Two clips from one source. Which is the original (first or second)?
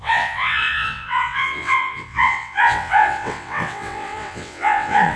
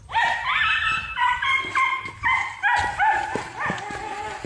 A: second